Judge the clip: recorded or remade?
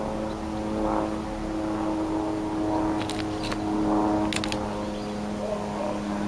recorded